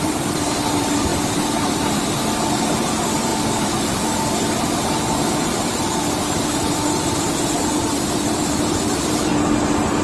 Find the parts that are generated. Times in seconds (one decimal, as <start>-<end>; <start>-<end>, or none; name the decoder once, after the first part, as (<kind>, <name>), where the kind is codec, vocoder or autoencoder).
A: 0.0-9.3 (vocoder, BigVGAN v2)